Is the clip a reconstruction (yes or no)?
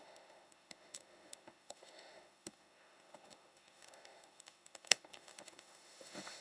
yes